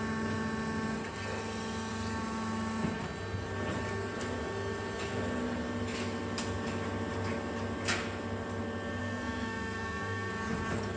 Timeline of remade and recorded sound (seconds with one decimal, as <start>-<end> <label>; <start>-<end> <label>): 0.0-9.0 recorded; 9.0-10.3 remade; 10.3-11.0 recorded